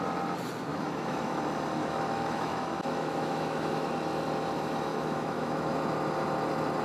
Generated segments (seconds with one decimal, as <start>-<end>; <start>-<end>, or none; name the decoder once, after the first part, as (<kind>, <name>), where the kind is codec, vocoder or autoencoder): 0.7-1.4 (autoencoder, DAC-VAE); 1.8-3.9; 4.9-5.7